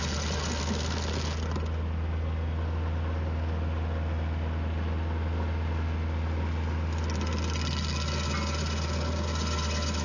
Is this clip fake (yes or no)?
no